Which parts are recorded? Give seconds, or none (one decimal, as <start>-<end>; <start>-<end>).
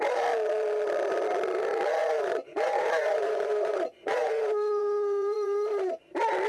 0.0-2.0; 5.9-6.5